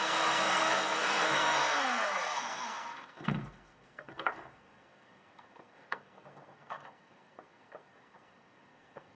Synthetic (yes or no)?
yes